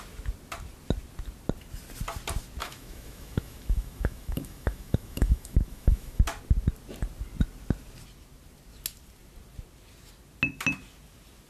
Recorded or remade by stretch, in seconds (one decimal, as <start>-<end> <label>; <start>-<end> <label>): 0.0-2.6 recorded; 2.6-6.2 remade; 6.2-11.5 recorded